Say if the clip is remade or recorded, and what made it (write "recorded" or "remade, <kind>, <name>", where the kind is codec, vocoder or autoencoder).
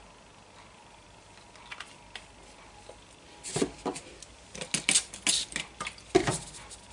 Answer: recorded